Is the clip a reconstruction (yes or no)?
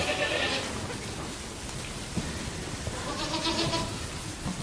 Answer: no